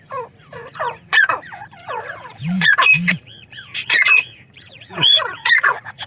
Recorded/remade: remade